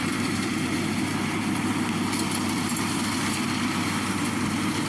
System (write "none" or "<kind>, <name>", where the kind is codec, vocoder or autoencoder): none